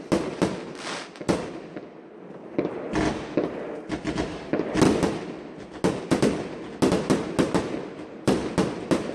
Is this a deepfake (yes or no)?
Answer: no